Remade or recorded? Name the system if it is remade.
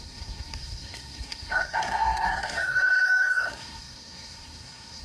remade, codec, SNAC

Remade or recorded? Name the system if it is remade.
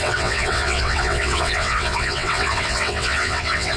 remade, vocoder, WaveNeXt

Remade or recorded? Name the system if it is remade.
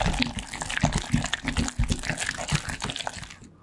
recorded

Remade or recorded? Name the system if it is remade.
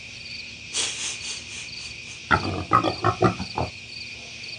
recorded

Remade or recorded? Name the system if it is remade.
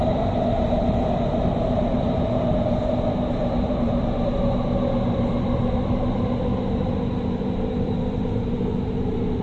remade, vocoder, BigVGAN v2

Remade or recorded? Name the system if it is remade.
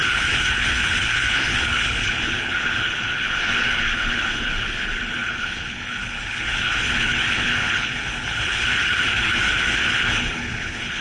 remade, codec, HILCodec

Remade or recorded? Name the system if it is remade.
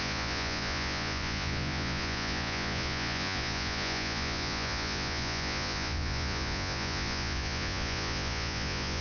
remade, vocoder, Vocos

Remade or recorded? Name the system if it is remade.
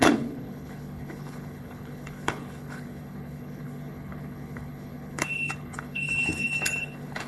remade, codec, HILCodec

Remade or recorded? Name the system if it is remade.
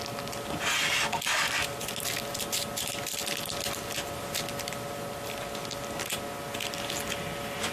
recorded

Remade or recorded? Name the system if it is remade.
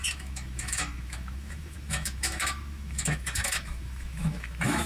remade, autoencoder, DAC-VAE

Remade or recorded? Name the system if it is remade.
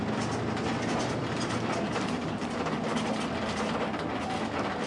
recorded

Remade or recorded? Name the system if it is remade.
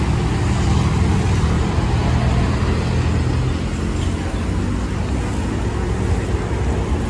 recorded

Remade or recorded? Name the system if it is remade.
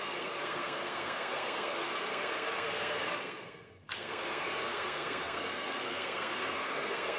remade, codec, SNAC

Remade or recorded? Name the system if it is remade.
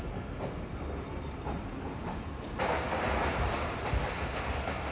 recorded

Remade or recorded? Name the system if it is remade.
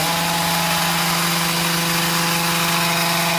recorded